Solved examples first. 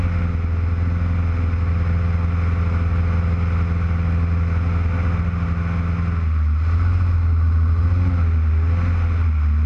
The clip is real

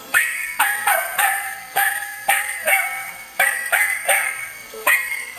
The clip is fake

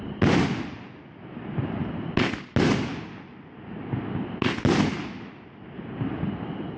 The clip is real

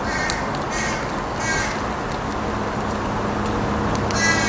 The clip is real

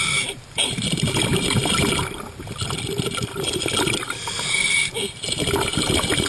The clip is real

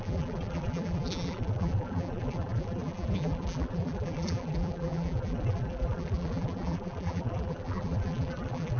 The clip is fake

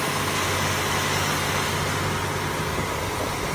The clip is real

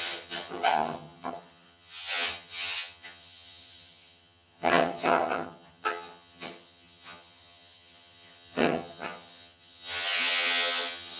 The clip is fake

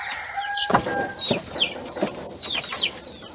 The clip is fake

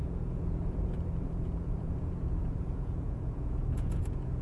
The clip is fake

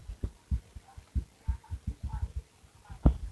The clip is real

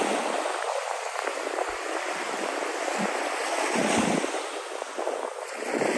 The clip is real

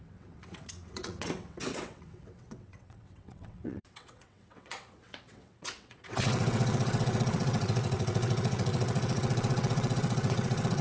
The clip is fake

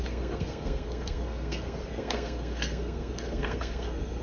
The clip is fake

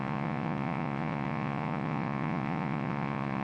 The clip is fake